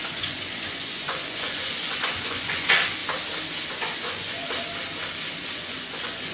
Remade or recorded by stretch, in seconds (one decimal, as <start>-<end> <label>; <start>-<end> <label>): 0.0-3.0 remade; 3.0-3.7 recorded; 3.7-4.4 remade; 4.4-5.5 recorded; 5.5-6.3 remade